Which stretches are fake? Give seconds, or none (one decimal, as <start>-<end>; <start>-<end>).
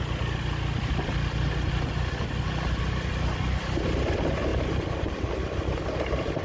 none